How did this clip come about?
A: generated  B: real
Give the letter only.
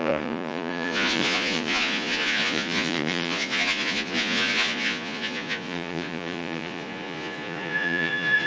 A